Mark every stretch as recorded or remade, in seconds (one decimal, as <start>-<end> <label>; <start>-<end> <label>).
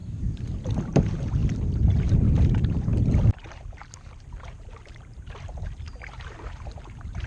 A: 0.0-0.8 recorded; 0.8-1.4 remade; 1.4-2.1 recorded; 2.1-2.9 remade; 2.9-3.5 recorded; 3.5-7.3 remade